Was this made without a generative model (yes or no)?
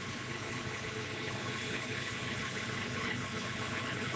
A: no